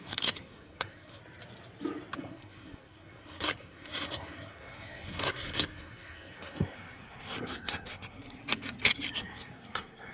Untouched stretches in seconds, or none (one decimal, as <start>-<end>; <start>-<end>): 1.2-2.2; 8.4-9.2